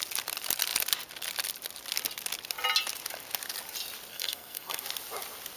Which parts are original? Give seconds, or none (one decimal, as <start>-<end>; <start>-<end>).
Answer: 0.0-4.1; 4.8-5.6

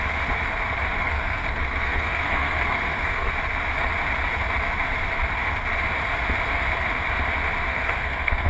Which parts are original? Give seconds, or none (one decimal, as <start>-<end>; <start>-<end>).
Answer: 0.0-1.0; 3.3-7.7

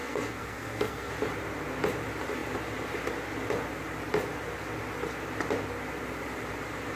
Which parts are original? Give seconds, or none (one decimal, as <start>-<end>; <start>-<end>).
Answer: 1.1-7.0

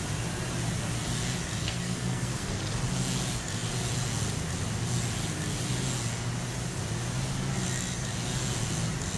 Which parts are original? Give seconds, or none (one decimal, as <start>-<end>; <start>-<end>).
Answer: 0.0-1.6; 2.6-9.2

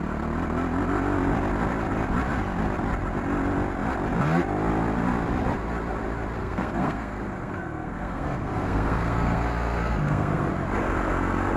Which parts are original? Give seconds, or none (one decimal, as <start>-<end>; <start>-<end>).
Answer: 0.0-6.4; 10.5-11.6

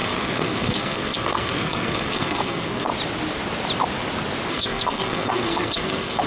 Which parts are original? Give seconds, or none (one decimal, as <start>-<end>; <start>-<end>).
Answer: 2.9-4.5

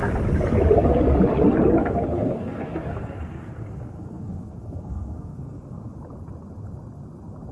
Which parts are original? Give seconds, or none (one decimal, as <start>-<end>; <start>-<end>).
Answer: 0.0-1.8; 5.9-7.5